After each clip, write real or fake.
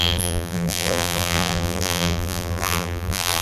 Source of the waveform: fake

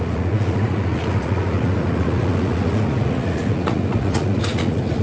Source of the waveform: fake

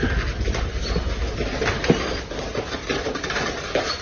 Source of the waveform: real